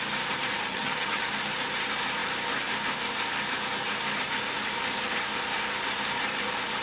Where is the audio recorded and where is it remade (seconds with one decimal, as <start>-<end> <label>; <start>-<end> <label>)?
0.0-0.7 recorded; 0.7-1.2 remade; 1.2-6.8 recorded